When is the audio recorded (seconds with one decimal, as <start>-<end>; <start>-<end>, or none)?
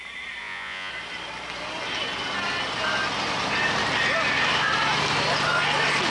0.0-0.4; 0.9-6.1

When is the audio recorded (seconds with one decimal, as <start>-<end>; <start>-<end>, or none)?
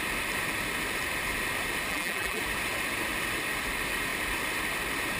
0.0-1.9; 2.4-5.2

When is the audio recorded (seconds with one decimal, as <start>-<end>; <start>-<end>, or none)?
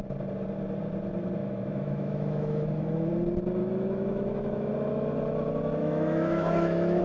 0.0-1.4; 3.1-3.6; 4.7-5.8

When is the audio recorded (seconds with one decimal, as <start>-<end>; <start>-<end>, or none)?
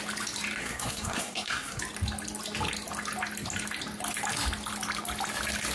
0.0-0.6; 1.8-5.7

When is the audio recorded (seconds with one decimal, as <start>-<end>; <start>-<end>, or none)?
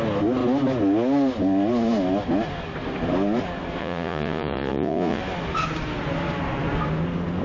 0.0-3.8; 5.2-7.4